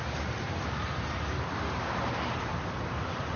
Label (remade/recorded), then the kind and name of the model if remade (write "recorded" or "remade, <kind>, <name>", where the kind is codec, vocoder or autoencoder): recorded